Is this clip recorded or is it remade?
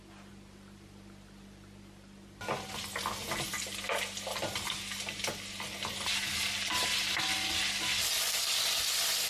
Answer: recorded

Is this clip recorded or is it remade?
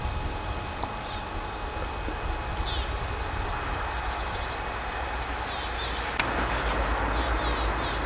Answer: recorded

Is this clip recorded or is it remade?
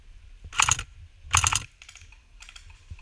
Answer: recorded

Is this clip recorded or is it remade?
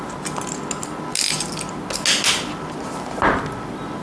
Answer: recorded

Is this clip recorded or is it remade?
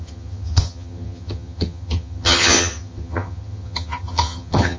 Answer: remade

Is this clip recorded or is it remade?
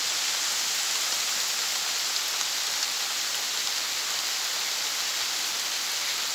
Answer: recorded